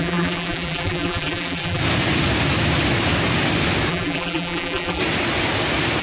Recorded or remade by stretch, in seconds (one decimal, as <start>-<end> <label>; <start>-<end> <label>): 0.0-1.8 remade; 1.8-3.9 recorded; 3.9-5.0 remade; 5.0-6.0 recorded